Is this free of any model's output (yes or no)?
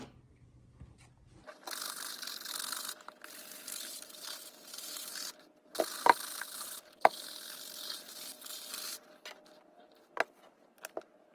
yes